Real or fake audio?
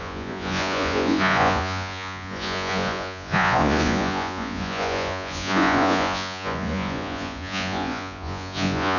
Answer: fake